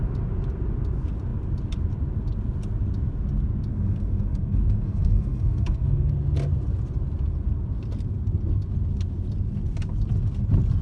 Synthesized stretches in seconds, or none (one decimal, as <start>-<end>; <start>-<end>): 3.7-6.1